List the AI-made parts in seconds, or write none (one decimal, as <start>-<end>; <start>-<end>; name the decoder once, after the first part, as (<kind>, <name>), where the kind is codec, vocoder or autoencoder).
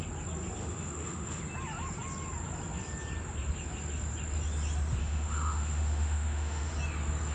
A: 0.6-1.4 (autoencoder, DAC-VAE); 5.0-6.7